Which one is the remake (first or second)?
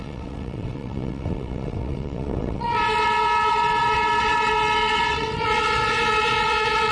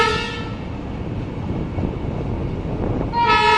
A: first